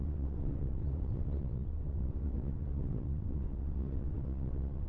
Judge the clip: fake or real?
fake